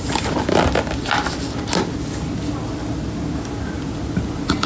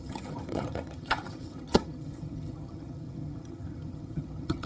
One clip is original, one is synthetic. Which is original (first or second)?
first